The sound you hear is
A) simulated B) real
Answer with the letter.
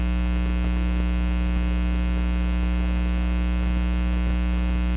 B